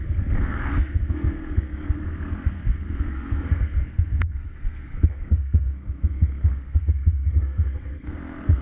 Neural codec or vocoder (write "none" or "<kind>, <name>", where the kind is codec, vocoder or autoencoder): codec, SNAC